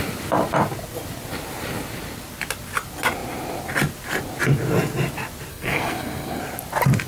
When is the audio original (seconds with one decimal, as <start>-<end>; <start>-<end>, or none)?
0.0-5.5; 6.4-7.1